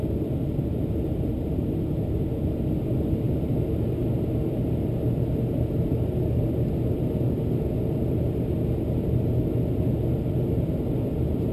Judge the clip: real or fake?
real